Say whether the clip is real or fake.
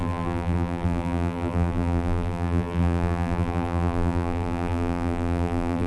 fake